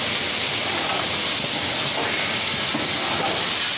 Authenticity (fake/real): real